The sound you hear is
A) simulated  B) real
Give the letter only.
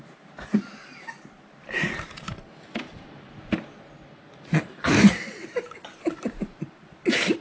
A